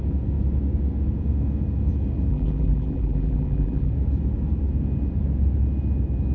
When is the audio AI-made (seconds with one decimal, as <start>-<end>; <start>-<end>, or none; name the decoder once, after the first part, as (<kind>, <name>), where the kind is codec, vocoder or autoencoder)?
2.3-3.9 (vocoder, BigVGAN v2)

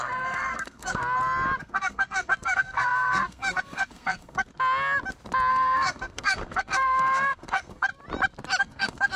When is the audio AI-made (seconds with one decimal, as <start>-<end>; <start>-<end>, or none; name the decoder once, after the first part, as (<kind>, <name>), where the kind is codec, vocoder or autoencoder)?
0.0-1.0 (codec, SNAC); 1.6-4.5; 5.5-7.9; 8.6-9.2

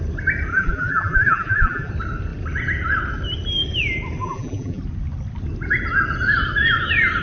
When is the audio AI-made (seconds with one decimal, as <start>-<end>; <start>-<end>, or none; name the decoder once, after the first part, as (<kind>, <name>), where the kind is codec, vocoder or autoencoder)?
0.5-1.9 (vocoder, BigVGAN v2); 4.2-4.8

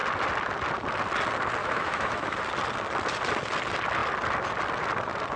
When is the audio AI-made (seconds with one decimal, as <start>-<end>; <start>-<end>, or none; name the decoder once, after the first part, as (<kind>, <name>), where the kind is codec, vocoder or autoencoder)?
1.6-2.4 (autoencoder, DAC-VAE)

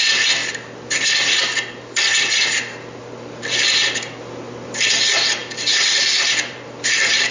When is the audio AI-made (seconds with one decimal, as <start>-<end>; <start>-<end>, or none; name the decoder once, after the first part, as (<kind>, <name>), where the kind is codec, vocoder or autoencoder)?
5.4-7.3 (vocoder, BigVGAN v2)

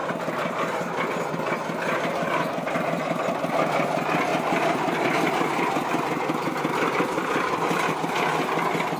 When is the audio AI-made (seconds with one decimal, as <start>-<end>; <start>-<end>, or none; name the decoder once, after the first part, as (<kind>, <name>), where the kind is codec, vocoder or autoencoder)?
4.3-7.9 (vocoder, BigVGAN v2)

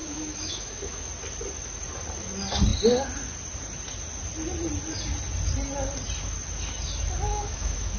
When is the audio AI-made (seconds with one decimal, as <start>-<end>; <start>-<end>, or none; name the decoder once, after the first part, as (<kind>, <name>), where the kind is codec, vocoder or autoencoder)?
0.0-1.1 (autoencoder, DAC-VAE); 7.3-8.0

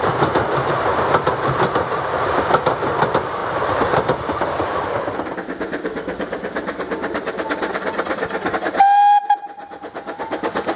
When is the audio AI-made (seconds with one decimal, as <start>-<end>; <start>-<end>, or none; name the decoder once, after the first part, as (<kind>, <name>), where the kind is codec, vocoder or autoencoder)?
3.4-8.5 (vocoder, BigVGAN v2)